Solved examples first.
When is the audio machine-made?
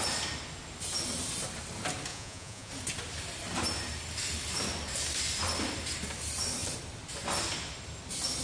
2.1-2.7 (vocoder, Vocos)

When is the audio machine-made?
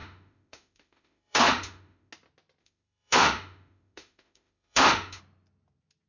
0.0-2.1 (autoencoder, DAC-VAE); 2.6-5.2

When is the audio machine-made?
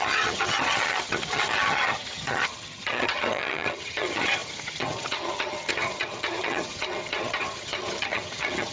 0.0-8.7 (vocoder, HiFi-GAN)